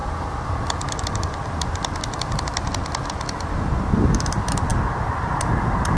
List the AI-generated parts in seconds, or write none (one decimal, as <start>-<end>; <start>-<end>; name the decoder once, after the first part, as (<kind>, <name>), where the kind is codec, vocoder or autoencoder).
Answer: none